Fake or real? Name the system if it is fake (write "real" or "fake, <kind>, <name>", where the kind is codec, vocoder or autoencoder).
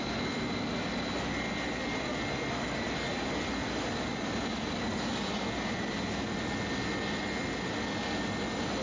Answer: real